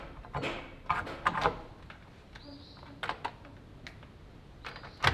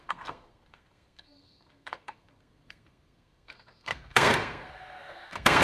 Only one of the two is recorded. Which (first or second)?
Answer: first